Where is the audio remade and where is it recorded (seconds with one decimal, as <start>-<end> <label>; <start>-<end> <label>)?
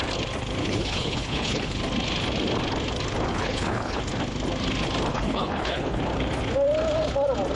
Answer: 0.0-0.6 recorded; 0.6-1.8 remade; 1.8-3.3 recorded; 3.3-4.0 remade; 4.0-5.1 recorded; 5.1-6.0 remade; 6.0-7.6 recorded